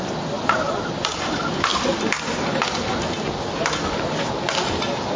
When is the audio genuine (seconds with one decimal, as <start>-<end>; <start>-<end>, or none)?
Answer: 0.0-5.2